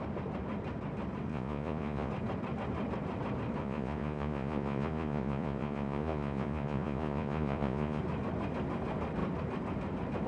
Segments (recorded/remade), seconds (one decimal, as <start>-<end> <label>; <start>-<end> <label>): 0.0-1.3 recorded; 1.3-2.1 remade; 2.1-3.6 recorded; 3.6-8.0 remade; 8.0-10.3 recorded

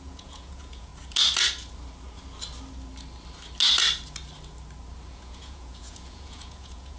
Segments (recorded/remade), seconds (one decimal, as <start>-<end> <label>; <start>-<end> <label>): 0.0-0.9 remade; 0.9-5.1 recorded; 5.1-7.0 remade

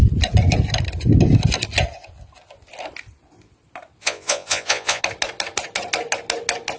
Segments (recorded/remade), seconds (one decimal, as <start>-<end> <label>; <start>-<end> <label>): 0.0-4.0 recorded; 4.0-5.0 remade; 5.0-6.8 recorded

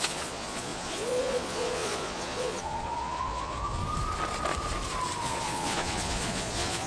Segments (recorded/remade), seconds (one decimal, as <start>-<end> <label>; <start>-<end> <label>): 0.0-3.8 remade; 3.8-5.2 recorded; 5.2-6.9 remade

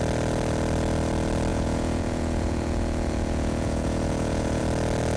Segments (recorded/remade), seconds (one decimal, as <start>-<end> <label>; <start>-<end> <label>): 0.0-1.5 recorded; 1.5-4.6 remade; 4.6-5.2 recorded

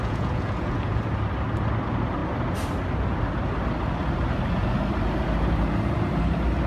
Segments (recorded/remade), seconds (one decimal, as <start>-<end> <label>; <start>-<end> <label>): 0.0-1.0 remade; 1.0-6.7 recorded

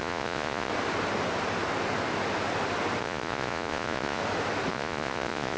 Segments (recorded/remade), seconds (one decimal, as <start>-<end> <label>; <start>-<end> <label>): 0.0-0.7 remade; 0.7-3.0 recorded; 3.0-4.2 remade; 4.2-4.7 recorded; 4.7-5.6 remade

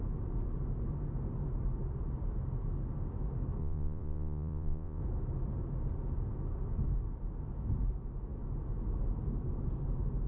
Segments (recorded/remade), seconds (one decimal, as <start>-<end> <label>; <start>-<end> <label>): 0.0-3.6 recorded; 3.6-5.0 remade; 5.0-10.3 recorded